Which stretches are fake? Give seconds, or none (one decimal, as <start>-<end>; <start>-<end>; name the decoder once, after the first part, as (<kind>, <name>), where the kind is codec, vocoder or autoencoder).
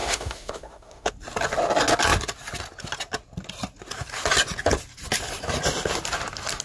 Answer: 0.0-1.1 (autoencoder, DAC-VAE)